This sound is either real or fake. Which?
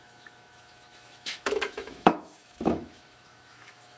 fake